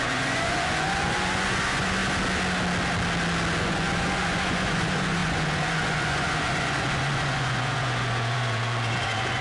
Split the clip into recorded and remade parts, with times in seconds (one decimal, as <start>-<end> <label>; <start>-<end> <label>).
0.0-2.0 remade; 2.0-3.6 recorded; 3.6-9.4 remade